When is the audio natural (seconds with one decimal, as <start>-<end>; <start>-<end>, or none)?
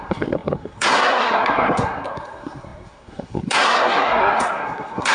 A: none